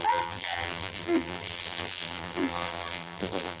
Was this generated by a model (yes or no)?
yes